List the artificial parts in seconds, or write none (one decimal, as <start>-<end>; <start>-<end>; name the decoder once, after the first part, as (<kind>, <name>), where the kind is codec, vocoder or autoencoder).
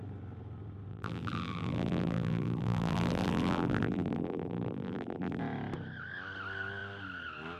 0.9-5.4 (vocoder, BigVGAN v2)